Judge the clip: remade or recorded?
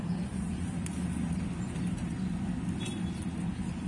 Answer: recorded